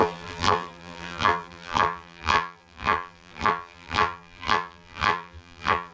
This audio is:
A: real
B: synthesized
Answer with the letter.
B